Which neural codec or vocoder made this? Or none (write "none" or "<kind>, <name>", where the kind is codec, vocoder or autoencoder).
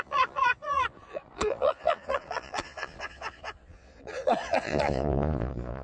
vocoder, Vocos